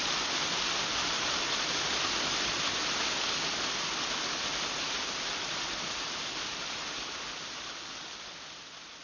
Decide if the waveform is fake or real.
real